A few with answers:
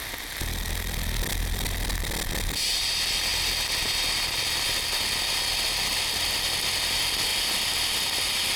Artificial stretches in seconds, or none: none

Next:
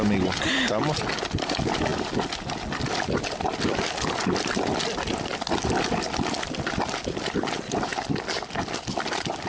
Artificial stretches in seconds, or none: none